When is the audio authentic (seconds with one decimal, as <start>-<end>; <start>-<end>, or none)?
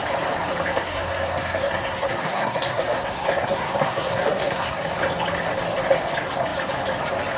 0.0-0.7; 4.8-7.4